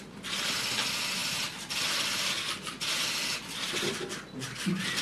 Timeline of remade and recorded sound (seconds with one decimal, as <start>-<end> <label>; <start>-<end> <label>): 0.0-5.0 recorded